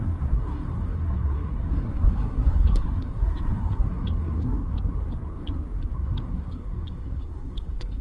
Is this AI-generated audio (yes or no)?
yes